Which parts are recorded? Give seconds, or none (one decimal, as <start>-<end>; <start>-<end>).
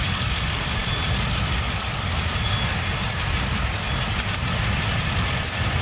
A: 0.0-5.8